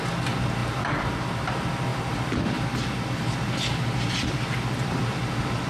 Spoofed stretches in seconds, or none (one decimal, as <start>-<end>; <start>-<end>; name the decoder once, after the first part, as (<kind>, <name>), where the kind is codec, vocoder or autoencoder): 0.6-1.1 (vocoder, BigVGAN v2)